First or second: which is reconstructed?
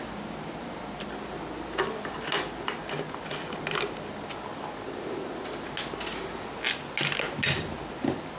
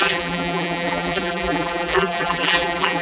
second